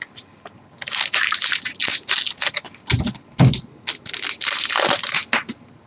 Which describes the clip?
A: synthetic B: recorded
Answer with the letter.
B